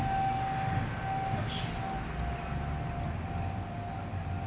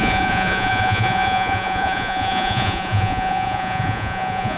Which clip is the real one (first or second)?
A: first